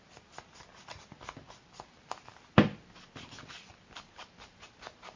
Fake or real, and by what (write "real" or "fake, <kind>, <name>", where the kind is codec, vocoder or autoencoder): real